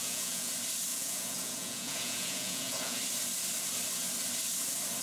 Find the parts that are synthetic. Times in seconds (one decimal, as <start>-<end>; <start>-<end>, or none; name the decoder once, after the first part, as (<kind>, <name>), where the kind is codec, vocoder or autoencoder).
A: 0.0-0.5 (vocoder, Vocos); 0.9-3.0